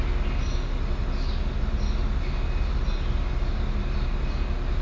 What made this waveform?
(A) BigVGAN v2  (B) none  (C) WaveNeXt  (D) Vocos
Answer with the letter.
B